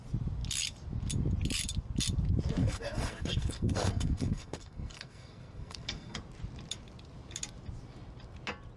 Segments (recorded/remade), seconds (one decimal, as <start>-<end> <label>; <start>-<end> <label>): 0.0-2.6 recorded; 2.6-6.2 remade; 6.2-8.8 recorded